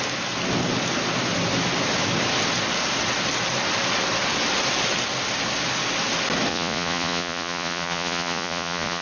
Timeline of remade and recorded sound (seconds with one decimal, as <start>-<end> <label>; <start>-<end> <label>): 0.0-6.5 recorded; 6.5-9.0 remade

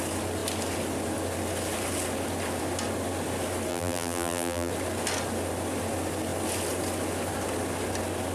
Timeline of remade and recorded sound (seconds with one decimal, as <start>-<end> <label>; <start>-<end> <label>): 0.0-3.7 recorded; 3.7-4.7 remade; 4.7-8.3 recorded